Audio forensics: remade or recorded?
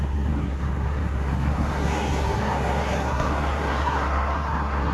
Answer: remade